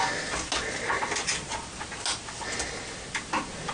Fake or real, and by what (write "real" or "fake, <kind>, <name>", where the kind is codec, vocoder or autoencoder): real